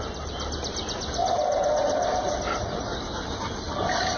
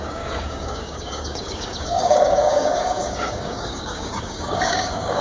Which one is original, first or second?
first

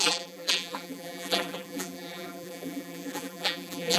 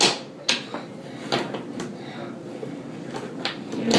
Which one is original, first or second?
second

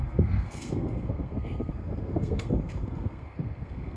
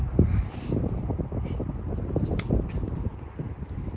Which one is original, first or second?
second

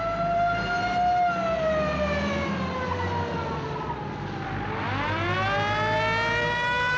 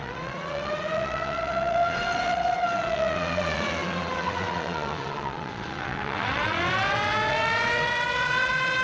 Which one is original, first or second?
first